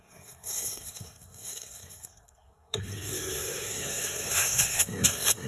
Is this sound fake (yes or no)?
yes